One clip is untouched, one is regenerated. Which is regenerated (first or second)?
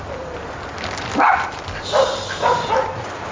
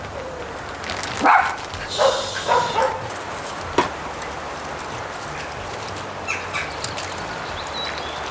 first